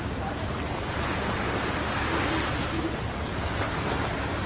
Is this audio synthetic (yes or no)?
no